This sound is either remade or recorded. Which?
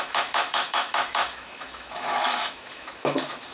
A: remade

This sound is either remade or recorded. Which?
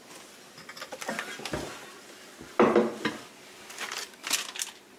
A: recorded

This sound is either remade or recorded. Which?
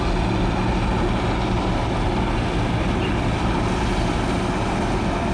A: recorded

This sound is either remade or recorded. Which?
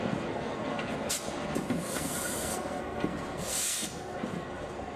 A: remade